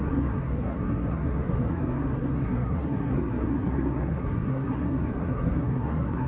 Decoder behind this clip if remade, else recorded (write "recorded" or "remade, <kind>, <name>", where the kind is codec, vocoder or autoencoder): remade, codec, SNAC